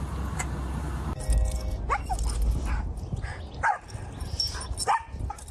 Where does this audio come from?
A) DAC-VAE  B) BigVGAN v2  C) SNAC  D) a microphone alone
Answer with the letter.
D